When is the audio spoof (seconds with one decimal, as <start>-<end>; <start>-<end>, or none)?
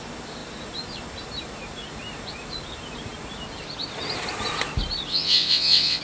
5.1-6.0